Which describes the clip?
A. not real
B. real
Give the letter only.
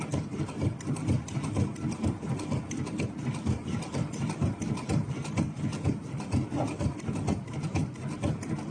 B